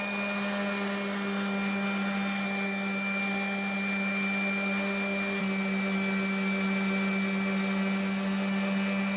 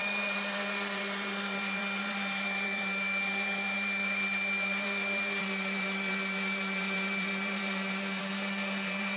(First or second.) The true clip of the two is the first